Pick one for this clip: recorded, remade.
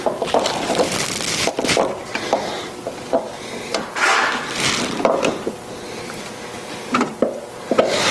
recorded